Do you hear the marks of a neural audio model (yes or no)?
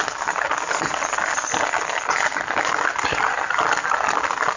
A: no